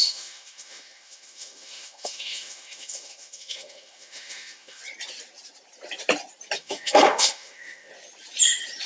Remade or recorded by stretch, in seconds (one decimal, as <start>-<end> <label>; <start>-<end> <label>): 0.0-4.8 remade; 4.8-6.6 recorded; 6.6-7.9 remade; 7.9-8.9 recorded